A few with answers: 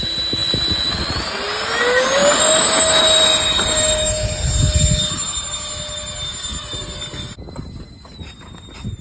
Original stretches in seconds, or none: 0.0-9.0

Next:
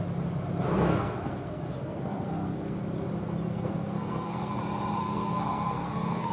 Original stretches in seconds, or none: 0.0-0.7; 2.8-3.5; 4.6-5.0

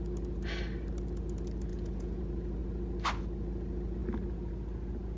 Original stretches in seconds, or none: 0.0-1.7; 2.2-5.2

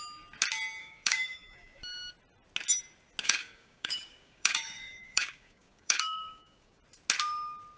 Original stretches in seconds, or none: 0.0-0.8; 1.8-3.2; 6.8-7.8

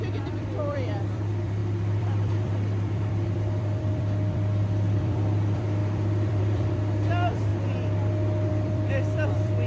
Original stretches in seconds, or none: 7.5-8.5

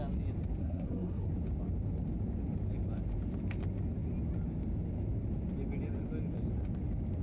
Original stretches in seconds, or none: 0.0-0.6; 1.3-7.2

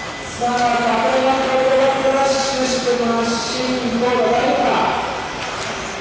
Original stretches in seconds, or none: 0.0-6.0

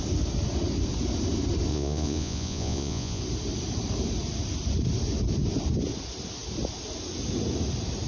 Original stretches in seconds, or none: 0.0-1.7; 3.2-8.1